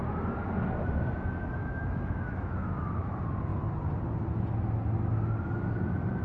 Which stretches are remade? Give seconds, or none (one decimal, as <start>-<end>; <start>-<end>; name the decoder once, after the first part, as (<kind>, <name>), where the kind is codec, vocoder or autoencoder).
1.6-3.1 (autoencoder, DAC-VAE)

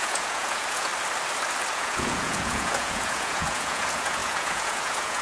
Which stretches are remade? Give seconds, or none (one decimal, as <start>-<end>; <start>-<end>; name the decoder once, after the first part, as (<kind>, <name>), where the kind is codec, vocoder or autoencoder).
0.0-0.9 (vocoder, Vocos); 1.7-5.2

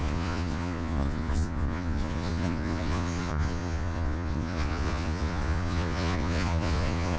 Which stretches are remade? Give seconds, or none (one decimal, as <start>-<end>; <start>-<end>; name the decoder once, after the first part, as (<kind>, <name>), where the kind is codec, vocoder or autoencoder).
0.0-7.2 (vocoder, Vocos)

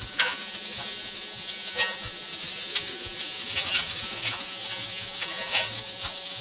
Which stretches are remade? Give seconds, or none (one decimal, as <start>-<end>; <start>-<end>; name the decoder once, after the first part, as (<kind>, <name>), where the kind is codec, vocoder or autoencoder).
0.0-6.4 (vocoder, Vocos)

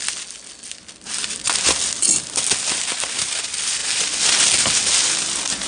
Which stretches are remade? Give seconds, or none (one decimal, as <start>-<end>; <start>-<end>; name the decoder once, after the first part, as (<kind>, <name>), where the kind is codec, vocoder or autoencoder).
none

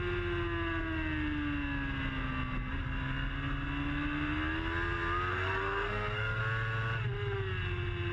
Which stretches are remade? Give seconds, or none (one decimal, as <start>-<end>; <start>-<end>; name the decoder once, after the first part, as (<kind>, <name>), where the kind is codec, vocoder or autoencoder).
5.3-6.4 (codec, SNAC)